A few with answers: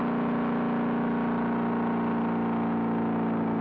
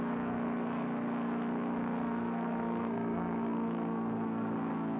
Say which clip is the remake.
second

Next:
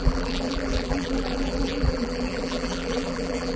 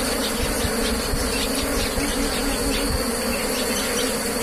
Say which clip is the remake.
first